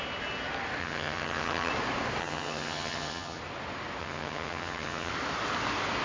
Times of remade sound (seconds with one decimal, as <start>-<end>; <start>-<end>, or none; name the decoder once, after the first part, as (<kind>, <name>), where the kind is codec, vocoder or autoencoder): 0.8-1.7 (vocoder, HiFi-GAN); 2.2-3.4; 4.0-5.1